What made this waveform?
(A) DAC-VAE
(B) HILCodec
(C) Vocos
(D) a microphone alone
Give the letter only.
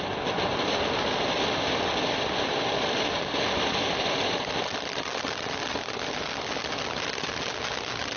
D